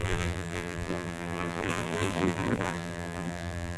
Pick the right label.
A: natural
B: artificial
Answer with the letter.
B